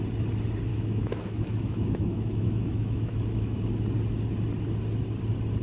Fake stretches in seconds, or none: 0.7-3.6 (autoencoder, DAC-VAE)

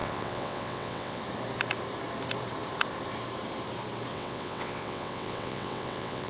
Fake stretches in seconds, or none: 0.0-1.2 (vocoder, WaveNeXt); 4.1-6.3

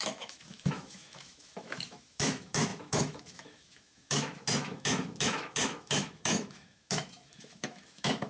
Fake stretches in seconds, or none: 0.0-8.3 (autoencoder, DAC-VAE)

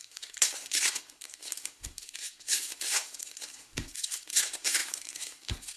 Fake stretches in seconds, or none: 0.0-5.8 (codec, SNAC)

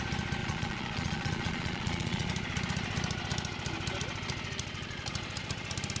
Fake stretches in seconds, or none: 0.4-2.3 (vocoder, Vocos)